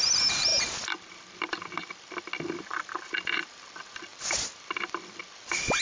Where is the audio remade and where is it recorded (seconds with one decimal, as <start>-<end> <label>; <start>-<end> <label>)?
0.0-5.8 recorded